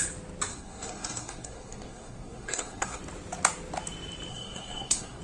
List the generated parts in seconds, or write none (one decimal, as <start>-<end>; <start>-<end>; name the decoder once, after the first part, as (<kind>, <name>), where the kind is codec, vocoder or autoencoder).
0.5-3.0 (codec, SNAC); 4.3-5.2